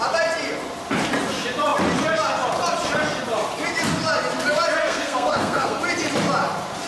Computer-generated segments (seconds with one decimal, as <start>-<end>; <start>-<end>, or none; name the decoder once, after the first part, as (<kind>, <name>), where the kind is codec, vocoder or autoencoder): 4.8-5.8 (codec, SNAC)